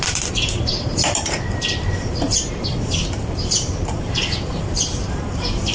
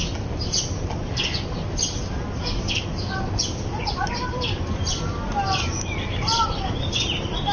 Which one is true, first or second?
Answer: second